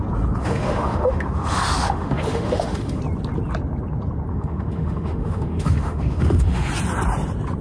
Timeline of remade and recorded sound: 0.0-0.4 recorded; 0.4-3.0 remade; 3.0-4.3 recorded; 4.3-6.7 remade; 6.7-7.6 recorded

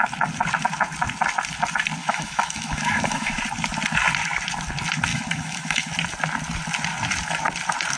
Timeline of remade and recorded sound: 0.0-2.0 recorded; 2.0-3.4 remade; 3.4-5.1 recorded; 5.1-5.9 remade; 5.9-8.0 recorded

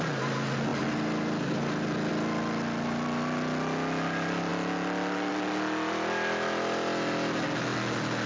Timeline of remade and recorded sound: 0.0-8.3 recorded